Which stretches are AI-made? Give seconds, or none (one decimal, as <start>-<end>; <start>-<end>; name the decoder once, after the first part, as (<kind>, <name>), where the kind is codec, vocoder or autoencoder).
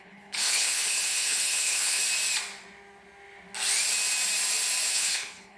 0.0-2.0 (codec, HILCodec); 4.9-5.6